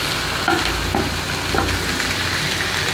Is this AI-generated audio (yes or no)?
no